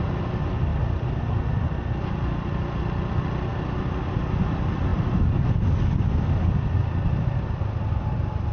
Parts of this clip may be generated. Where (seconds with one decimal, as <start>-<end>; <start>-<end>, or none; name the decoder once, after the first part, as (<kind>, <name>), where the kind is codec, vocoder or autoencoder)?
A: none